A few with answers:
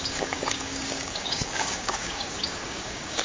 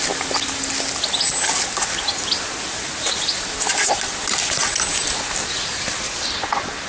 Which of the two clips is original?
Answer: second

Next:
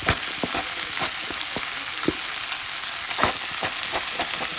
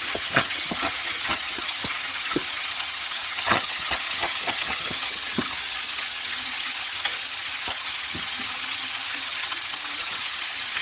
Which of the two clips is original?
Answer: first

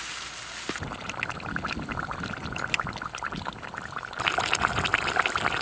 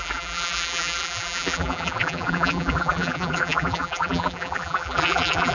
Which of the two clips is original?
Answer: first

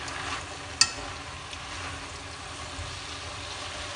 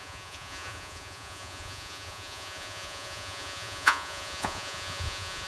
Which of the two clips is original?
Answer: first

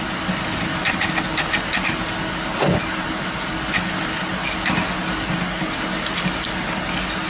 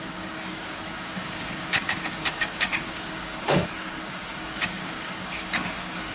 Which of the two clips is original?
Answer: first